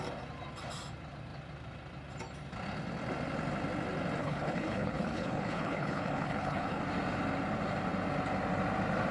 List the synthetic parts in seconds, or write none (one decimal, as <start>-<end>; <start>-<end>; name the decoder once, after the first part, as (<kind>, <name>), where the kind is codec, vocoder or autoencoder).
4.2-6.8 (codec, HILCodec)